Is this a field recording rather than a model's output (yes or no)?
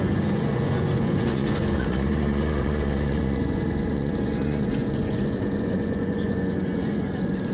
no